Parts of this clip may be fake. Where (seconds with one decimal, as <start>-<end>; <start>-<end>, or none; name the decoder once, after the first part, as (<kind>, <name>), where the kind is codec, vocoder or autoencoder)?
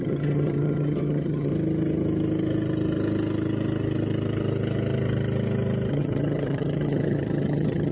0.0-1.5 (vocoder, HiFi-GAN); 5.9-7.9